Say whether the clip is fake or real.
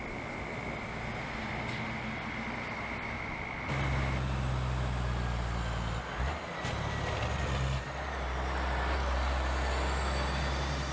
real